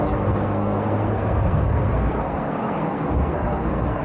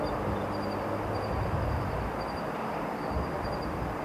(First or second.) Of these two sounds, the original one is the second